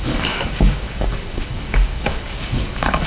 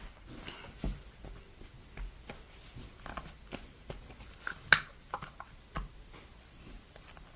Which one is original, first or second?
second